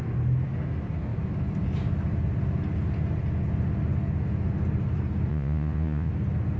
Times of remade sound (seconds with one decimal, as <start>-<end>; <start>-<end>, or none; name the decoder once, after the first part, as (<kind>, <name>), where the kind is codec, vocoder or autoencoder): 5.3-6.1 (vocoder, Vocos)